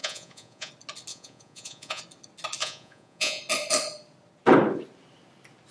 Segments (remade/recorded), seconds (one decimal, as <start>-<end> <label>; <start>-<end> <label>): 0.0-0.7 remade; 0.7-1.1 recorded; 1.1-2.0 remade; 2.0-2.6 recorded; 2.6-3.4 remade; 3.4-5.7 recorded

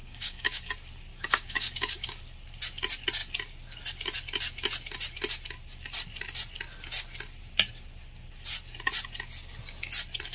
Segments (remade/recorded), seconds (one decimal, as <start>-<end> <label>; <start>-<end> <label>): 0.0-0.7 remade; 0.7-1.1 recorded; 1.1-2.2 remade; 2.2-10.3 recorded

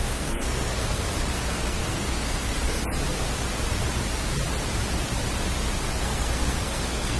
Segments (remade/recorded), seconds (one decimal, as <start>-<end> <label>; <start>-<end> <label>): 0.0-2.8 remade; 2.8-6.0 recorded; 6.0-7.2 remade

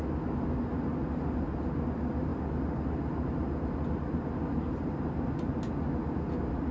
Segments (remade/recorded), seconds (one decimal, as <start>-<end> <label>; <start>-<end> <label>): 0.0-6.7 recorded